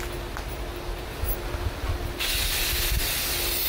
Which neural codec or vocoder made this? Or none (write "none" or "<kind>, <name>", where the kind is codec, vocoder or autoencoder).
none